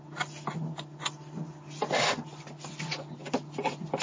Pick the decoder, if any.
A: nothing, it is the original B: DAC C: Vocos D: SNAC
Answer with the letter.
A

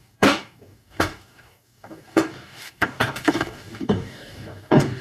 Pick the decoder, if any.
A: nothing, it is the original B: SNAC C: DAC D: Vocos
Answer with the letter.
C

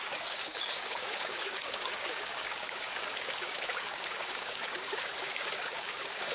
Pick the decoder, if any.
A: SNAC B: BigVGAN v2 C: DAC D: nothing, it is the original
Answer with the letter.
C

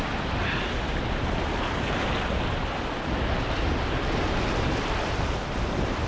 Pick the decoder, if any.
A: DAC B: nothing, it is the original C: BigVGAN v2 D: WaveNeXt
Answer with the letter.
B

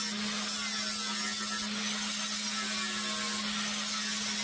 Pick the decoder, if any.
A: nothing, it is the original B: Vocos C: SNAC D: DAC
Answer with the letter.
A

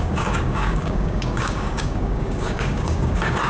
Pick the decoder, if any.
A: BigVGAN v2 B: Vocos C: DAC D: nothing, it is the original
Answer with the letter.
C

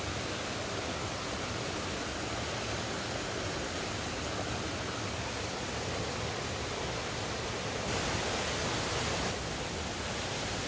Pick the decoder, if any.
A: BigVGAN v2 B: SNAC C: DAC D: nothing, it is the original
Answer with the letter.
D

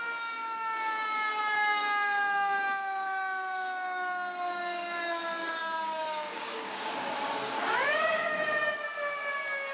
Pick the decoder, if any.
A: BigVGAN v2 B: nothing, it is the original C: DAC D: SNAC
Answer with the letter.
C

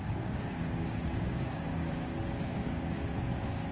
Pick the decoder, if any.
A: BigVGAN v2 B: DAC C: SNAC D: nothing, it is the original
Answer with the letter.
B